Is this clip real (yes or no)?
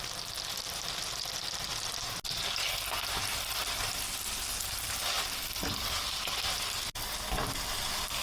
yes